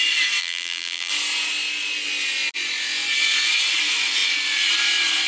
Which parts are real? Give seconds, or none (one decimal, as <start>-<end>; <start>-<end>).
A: 0.0-0.4; 1.1-5.3